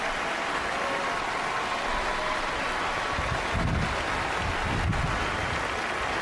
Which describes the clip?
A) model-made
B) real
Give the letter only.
B